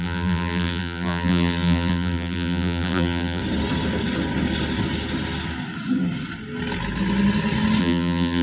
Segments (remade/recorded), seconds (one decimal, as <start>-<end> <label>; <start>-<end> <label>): 0.0-3.4 remade; 3.4-7.8 recorded; 7.8-8.4 remade